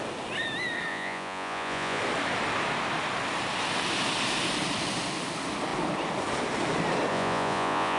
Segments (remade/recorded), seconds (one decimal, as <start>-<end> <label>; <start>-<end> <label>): 0.0-0.9 recorded; 0.9-2.0 remade; 2.0-7.1 recorded; 7.1-8.0 remade